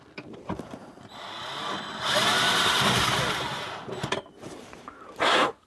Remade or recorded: remade